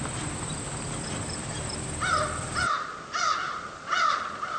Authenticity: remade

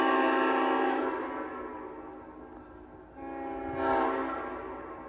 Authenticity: recorded